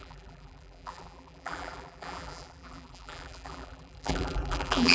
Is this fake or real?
fake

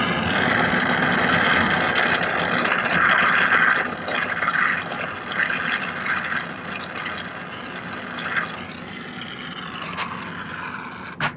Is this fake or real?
real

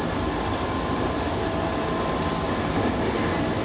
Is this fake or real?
real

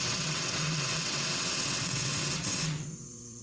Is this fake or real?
fake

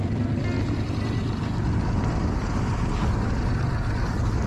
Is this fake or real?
real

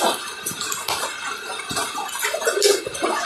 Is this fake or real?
real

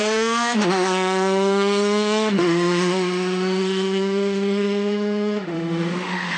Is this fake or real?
fake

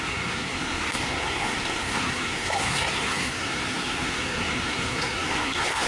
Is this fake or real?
fake